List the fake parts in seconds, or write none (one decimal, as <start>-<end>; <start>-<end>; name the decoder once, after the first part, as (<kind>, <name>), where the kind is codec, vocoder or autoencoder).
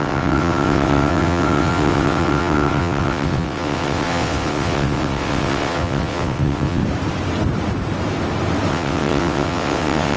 0.0-6.8 (vocoder, WaveNeXt); 8.7-10.2